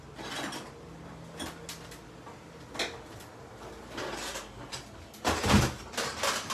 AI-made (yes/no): no